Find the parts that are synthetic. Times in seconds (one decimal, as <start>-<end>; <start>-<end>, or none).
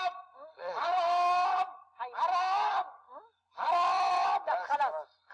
none